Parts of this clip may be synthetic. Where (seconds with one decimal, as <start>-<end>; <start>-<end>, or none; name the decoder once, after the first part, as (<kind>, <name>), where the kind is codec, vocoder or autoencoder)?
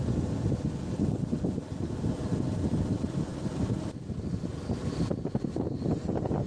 none